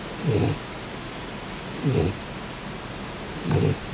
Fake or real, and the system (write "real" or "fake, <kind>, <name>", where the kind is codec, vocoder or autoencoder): real